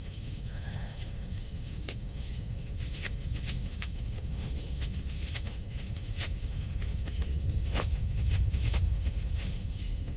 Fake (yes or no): yes